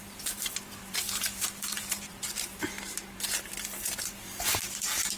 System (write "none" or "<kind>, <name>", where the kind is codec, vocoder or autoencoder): vocoder, BigVGAN v2